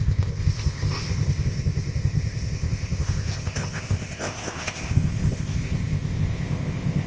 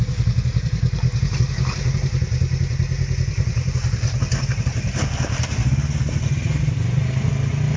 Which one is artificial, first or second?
first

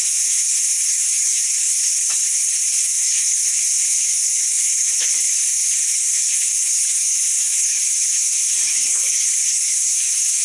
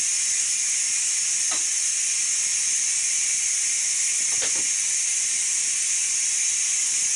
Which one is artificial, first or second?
first